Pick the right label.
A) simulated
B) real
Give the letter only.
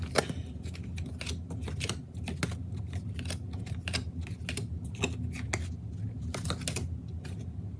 B